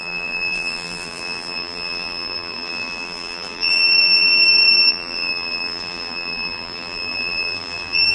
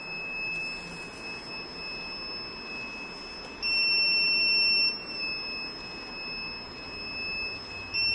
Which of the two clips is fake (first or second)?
first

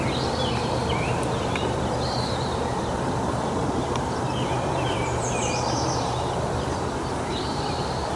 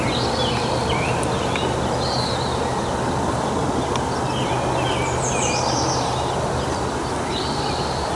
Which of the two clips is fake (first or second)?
first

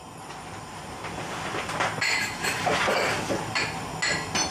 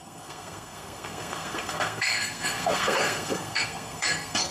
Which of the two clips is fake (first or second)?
second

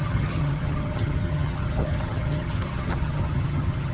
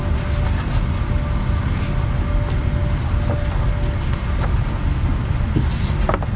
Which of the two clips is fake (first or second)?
first